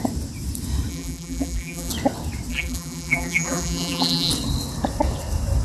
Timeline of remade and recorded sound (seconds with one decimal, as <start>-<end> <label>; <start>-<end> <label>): 0.0-0.9 recorded; 0.9-1.9 remade; 1.9-2.5 recorded; 2.5-4.3 remade; 4.3-5.6 recorded